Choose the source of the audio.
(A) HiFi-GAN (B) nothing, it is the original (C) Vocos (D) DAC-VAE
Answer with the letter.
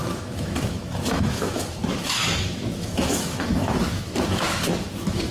D